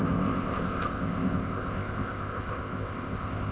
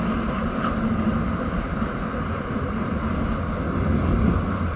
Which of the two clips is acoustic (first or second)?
second